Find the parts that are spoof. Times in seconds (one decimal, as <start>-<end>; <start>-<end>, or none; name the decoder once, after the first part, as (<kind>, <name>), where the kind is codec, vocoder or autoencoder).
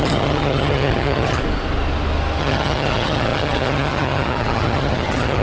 0.0-1.4 (vocoder, HiFi-GAN); 2.4-5.4